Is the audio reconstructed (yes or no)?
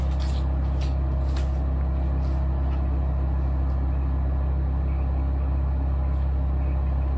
no